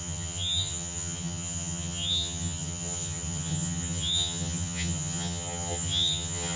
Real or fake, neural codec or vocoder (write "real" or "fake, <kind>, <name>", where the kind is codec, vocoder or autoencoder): fake, vocoder, HiFi-GAN